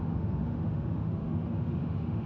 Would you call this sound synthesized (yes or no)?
yes